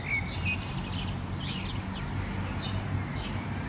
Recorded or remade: recorded